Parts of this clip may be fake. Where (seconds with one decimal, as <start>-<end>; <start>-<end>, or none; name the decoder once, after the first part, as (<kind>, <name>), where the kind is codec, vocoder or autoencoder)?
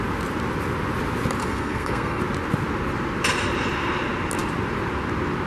1.4-2.2 (codec, SNAC)